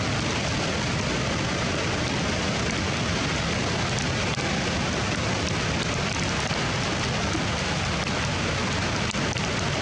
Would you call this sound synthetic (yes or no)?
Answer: no